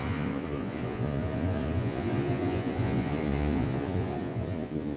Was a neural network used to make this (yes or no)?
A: yes